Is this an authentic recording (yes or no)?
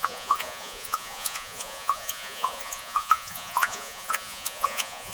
no